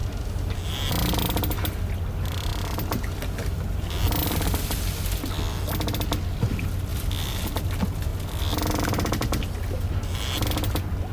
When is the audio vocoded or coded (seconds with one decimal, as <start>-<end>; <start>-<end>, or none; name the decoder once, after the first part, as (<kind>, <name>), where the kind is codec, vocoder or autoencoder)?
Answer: none